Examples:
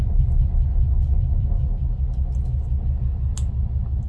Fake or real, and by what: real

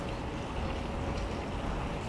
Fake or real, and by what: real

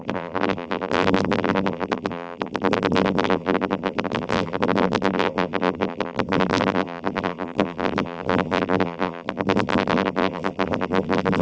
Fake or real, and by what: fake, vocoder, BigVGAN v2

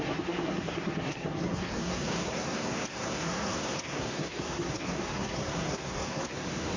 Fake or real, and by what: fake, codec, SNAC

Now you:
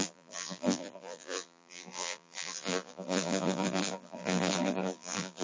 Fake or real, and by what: fake, vocoder, BigVGAN v2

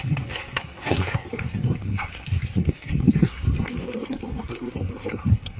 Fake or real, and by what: fake, codec, SNAC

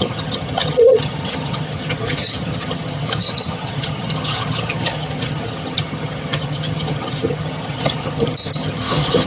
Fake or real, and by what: fake, vocoder, HiFi-GAN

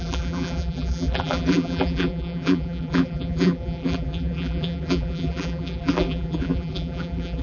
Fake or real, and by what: fake, vocoder, BigVGAN v2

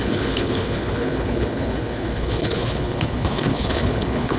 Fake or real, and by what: fake, codec, HILCodec